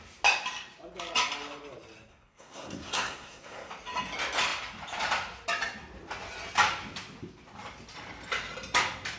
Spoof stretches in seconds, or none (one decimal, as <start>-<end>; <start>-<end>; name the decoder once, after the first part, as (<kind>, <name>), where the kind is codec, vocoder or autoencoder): 2.1-3.7 (codec, SNAC)